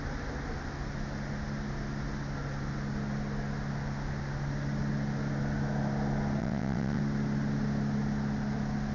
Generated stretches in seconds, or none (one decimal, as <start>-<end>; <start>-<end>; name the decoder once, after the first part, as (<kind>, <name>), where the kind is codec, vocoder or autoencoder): 6.4-7.0 (vocoder, WaveNeXt)